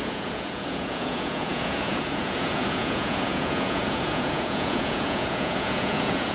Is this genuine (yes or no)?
no